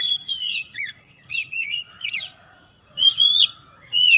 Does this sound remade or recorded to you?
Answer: remade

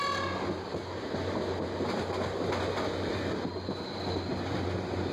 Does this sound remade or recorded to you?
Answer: recorded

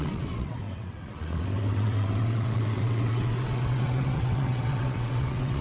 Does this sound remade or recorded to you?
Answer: remade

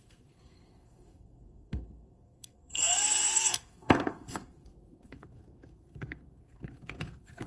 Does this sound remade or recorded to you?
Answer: remade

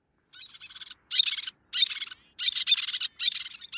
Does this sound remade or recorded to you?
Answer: recorded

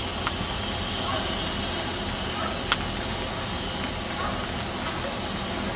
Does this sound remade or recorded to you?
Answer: recorded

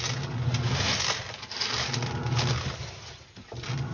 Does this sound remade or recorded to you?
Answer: recorded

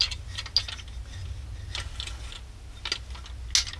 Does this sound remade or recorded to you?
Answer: recorded